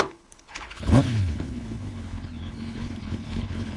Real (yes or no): no